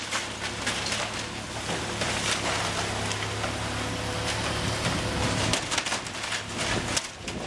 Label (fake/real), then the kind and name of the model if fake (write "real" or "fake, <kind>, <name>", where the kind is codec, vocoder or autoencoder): real